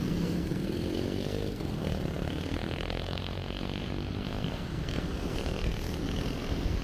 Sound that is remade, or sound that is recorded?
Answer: remade